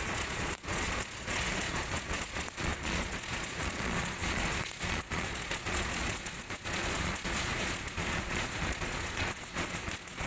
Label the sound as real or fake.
fake